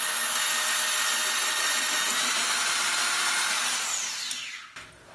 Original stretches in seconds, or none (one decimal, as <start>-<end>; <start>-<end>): 0.0-5.1